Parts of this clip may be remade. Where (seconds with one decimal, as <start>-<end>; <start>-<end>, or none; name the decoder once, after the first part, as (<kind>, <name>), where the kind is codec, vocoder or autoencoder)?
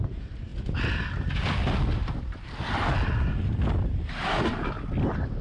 none